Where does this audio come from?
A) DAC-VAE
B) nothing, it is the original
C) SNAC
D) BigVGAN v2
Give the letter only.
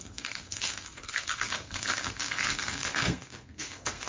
C